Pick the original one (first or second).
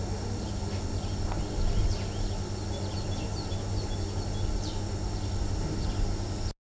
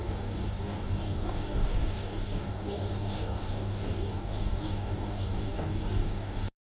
first